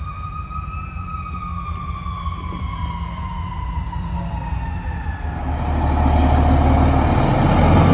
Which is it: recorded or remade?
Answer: recorded